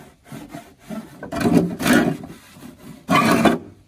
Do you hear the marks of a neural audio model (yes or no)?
no